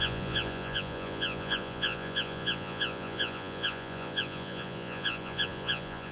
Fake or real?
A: fake